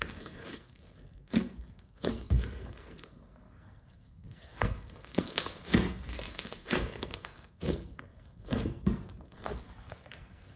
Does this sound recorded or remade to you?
remade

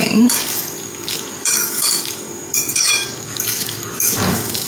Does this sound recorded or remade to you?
remade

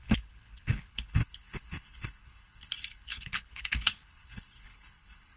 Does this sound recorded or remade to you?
remade